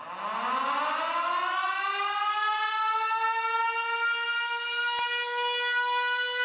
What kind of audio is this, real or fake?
real